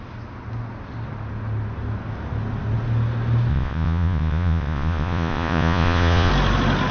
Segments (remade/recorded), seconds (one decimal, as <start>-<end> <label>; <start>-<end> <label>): 0.0-3.5 recorded; 3.5-6.3 remade; 6.3-6.9 recorded